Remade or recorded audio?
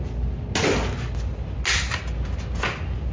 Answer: recorded